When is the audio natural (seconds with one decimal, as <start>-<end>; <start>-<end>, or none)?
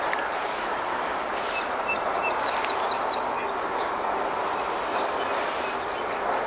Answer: 0.0-6.5